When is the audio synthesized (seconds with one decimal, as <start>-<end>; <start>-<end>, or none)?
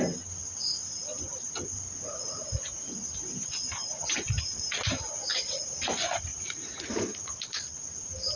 6.3-6.9